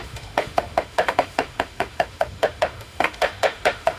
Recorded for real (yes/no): no